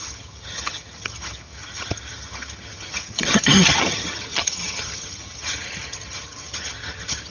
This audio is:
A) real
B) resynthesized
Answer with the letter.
B